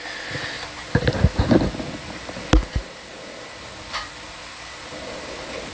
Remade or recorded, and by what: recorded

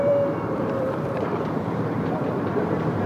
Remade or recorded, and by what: remade, vocoder, BigVGAN v2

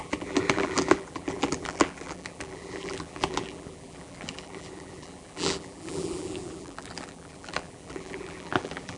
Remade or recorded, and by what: remade, vocoder, BigVGAN v2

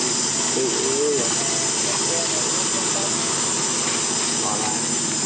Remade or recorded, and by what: recorded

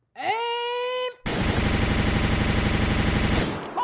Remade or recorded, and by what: recorded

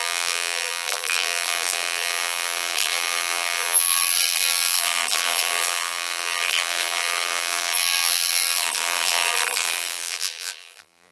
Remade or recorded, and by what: remade, vocoder, BigVGAN v2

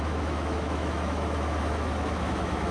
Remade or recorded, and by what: remade, autoencoder, DAC-VAE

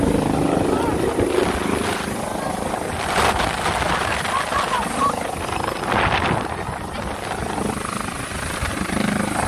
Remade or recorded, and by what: recorded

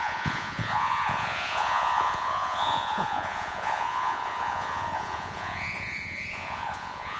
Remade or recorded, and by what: remade, vocoder, Vocos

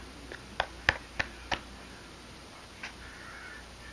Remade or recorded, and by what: recorded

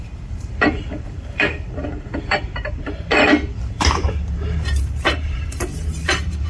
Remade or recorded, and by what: remade, vocoder, BigVGAN v2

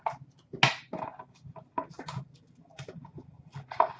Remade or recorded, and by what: recorded